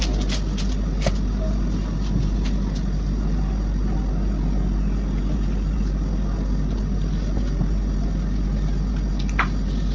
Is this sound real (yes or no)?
yes